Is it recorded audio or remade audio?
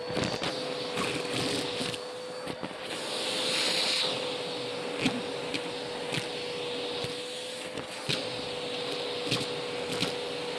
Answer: recorded